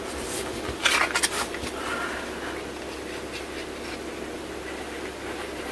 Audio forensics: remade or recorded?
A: recorded